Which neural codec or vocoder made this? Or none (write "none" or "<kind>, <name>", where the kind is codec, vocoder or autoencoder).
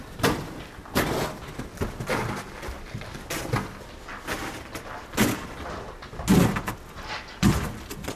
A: none